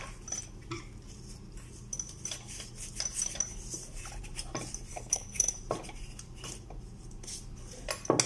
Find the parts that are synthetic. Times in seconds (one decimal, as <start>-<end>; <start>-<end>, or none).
4.9-5.5